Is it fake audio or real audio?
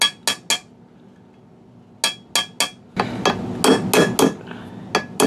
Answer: real